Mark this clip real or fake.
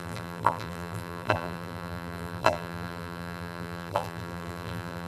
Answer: fake